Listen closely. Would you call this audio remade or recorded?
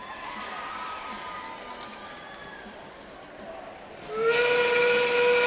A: recorded